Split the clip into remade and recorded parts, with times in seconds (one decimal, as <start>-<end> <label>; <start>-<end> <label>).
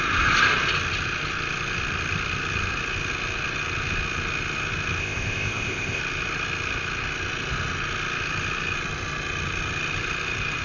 0.0-5.0 recorded; 5.0-6.0 remade; 6.0-10.6 recorded